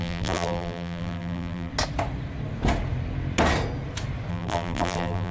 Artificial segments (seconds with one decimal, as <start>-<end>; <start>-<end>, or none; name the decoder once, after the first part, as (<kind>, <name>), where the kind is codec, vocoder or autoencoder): 0.0-1.7 (vocoder, BigVGAN v2); 4.3-5.3